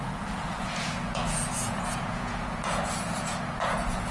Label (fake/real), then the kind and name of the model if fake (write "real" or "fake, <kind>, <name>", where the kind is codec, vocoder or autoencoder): fake, vocoder, Vocos